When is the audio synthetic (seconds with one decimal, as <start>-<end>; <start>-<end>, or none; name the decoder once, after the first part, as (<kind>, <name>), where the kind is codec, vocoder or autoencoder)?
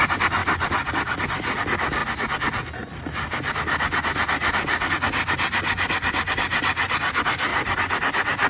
0.4-0.9 (vocoder, BigVGAN v2)